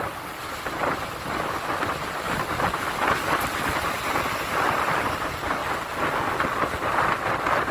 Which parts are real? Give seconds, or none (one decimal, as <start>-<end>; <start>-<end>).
0.0-7.7